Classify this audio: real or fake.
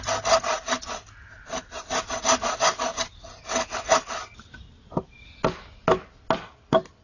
real